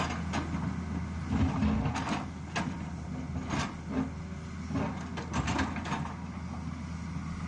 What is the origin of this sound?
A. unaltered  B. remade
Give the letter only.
A